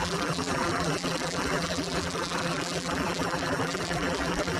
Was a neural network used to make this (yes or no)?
yes